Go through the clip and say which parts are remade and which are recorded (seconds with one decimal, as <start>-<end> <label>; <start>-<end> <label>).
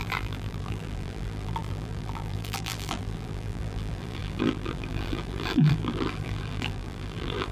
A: 0.0-7.5 remade